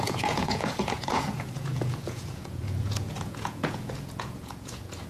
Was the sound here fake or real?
fake